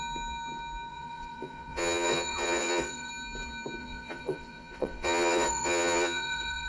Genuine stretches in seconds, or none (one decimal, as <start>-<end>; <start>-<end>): 0.0-0.9; 3.1-3.8